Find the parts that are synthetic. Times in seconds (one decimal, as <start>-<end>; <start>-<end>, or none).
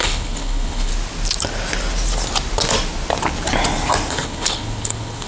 0.0-0.9; 4.1-5.3